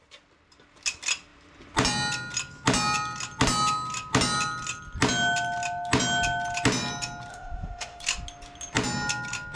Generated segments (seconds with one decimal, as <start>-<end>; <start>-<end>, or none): 7.3-8.0